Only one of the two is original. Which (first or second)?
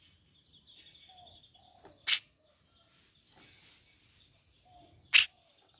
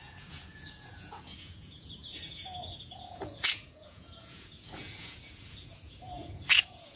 first